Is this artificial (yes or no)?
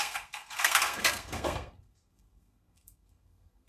yes